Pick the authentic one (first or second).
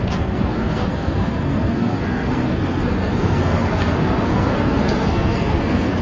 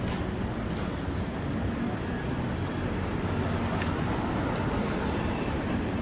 second